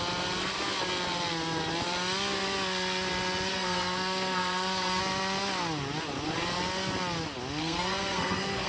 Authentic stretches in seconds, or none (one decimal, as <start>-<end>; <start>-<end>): 0.0-3.5; 5.0-7.6